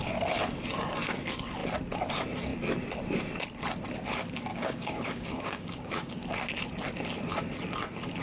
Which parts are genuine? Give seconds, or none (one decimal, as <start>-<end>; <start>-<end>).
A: 0.0-4.5; 6.1-8.2

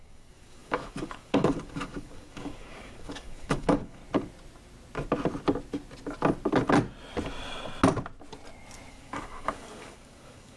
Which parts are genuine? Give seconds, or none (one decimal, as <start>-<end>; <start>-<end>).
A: 4.0-8.9

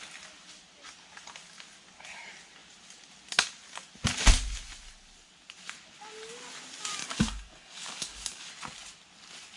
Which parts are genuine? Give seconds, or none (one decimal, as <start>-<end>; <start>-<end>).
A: 0.0-7.0; 8.5-9.6

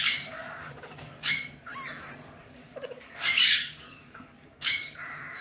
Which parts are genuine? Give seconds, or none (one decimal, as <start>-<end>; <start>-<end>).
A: 1.7-2.4

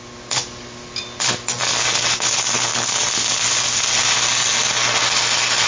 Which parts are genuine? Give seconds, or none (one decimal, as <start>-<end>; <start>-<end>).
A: 0.0-5.7

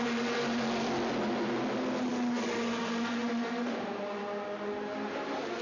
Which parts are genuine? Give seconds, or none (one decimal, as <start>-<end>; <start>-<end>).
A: 0.0-2.1; 2.8-5.6

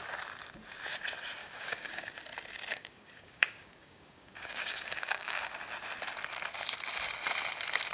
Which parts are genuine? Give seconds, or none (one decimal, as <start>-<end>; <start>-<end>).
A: 0.0-1.4; 2.1-2.7; 5.5-7.9

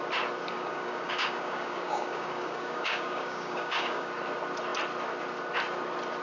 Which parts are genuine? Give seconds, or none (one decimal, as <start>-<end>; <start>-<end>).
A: 0.0-0.5; 4.1-6.2